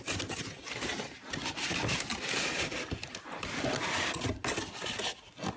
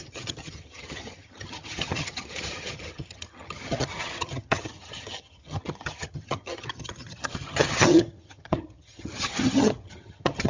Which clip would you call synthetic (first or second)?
second